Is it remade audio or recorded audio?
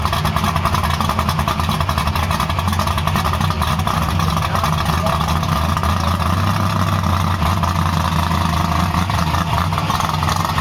recorded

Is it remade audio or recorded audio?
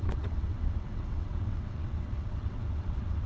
remade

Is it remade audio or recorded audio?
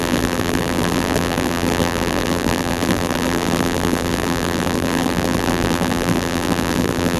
remade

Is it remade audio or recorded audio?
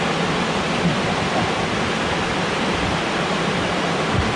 recorded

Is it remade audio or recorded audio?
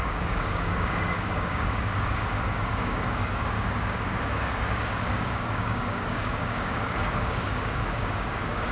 remade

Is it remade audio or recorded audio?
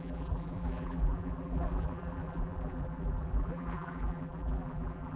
remade